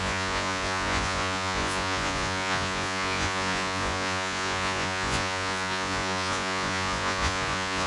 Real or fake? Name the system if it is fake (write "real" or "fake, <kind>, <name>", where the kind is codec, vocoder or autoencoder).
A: fake, vocoder, Vocos